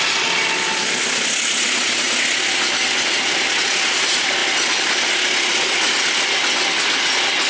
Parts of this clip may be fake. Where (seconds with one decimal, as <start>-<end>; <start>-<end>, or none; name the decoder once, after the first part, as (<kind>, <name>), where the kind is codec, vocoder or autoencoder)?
none